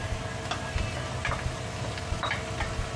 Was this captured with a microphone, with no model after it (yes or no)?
yes